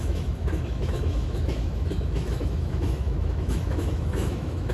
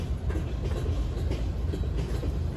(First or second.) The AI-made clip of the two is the first